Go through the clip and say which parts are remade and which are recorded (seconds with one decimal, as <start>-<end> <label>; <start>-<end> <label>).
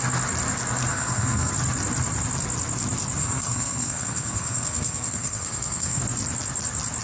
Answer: 0.0-0.9 recorded; 0.9-1.5 remade; 1.5-3.2 recorded; 3.2-6.0 remade; 6.0-7.0 recorded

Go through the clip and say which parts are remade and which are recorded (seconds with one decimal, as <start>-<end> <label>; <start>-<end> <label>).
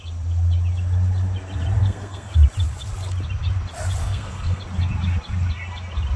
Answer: 0.0-1.8 recorded; 1.8-2.3 remade; 2.3-4.0 recorded; 4.0-4.6 remade; 4.6-6.2 recorded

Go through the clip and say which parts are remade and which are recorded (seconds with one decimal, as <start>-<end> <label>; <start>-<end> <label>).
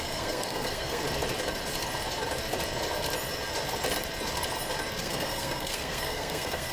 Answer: 0.0-1.0 remade; 1.0-5.0 recorded; 5.0-6.7 remade